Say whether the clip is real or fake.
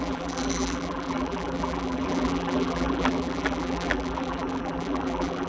fake